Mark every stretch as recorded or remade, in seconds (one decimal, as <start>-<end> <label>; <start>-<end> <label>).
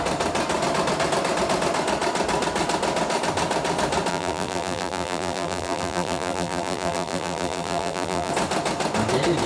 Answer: 0.0-4.1 recorded; 4.1-8.3 remade; 8.3-9.5 recorded